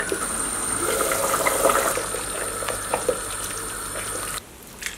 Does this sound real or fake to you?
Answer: fake